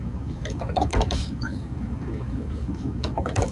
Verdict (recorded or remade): remade